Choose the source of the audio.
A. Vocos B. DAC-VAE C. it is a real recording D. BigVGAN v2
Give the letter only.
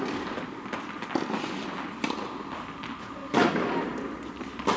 C